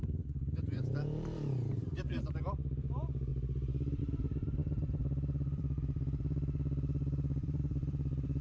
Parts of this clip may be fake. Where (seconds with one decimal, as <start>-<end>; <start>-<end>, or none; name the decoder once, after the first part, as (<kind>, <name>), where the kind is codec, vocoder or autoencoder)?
0.0-8.4 (vocoder, BigVGAN v2)